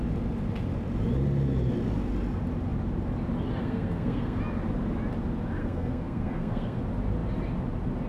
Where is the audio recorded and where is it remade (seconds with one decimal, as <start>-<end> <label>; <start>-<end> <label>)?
0.0-3.6 recorded; 3.6-4.4 remade; 4.4-5.6 recorded; 5.6-6.8 remade; 6.8-8.1 recorded